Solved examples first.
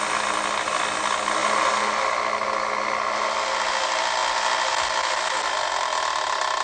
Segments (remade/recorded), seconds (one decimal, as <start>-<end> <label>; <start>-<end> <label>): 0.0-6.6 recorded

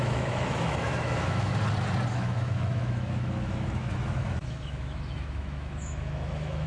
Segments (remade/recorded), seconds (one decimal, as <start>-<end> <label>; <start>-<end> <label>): 0.0-1.5 remade; 1.5-2.1 recorded; 2.1-6.7 remade

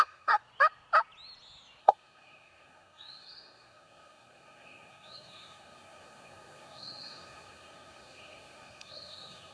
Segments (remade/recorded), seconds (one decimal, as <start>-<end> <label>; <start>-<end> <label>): 0.0-0.4 remade; 0.4-1.8 recorded; 1.8-9.5 remade

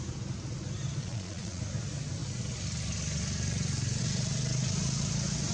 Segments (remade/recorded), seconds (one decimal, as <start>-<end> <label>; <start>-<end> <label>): 0.0-1.0 recorded; 1.0-1.6 remade; 1.6-5.5 recorded